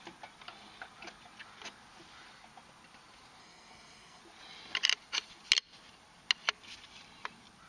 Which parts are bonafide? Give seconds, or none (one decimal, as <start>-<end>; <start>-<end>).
0.0-3.4; 4.2-7.7